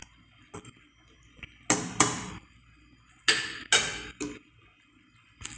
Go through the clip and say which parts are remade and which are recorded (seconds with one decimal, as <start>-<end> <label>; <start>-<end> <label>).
0.0-5.6 recorded